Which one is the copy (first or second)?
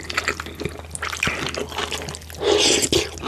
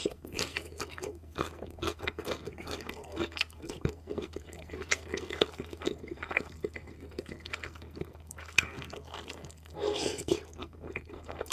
second